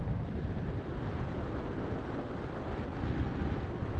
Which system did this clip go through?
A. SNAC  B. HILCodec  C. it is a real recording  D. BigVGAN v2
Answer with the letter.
C